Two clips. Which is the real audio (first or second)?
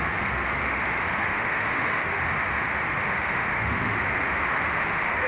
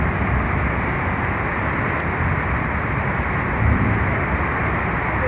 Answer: second